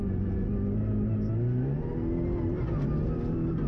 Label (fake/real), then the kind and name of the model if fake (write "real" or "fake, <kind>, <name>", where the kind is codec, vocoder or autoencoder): real